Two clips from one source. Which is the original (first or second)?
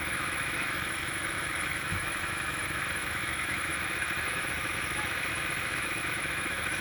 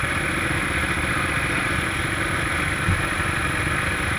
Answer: second